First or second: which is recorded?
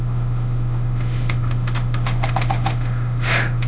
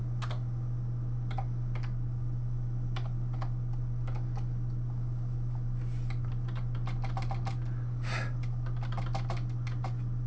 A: second